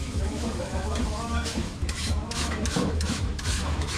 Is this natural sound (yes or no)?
no